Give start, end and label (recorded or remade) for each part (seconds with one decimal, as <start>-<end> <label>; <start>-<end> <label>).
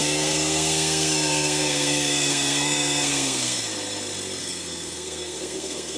0.0-3.6 remade; 3.6-4.4 recorded; 4.4-6.0 remade